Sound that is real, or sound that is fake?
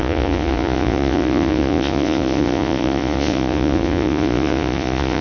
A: fake